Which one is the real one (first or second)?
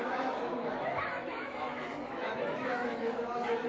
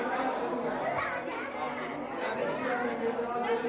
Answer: second